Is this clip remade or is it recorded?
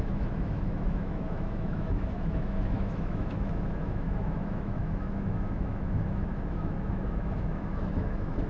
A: remade